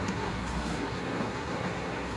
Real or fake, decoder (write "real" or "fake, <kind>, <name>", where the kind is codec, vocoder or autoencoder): fake, codec, SNAC